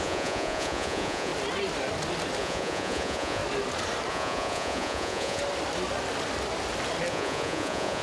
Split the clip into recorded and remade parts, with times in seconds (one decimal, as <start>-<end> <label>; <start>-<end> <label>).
0.0-1.3 remade; 1.3-2.4 recorded; 2.4-3.4 remade; 3.4-4.1 recorded; 4.1-5.4 remade; 5.4-7.1 recorded; 7.1-8.0 remade

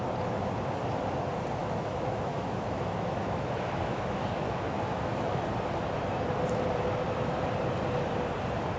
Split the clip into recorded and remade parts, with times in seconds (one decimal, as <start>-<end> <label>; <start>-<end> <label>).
0.0-1.6 recorded; 1.6-5.4 remade; 5.4-8.8 recorded